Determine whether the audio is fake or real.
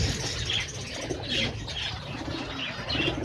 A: real